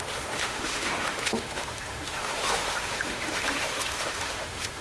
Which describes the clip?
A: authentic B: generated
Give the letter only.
B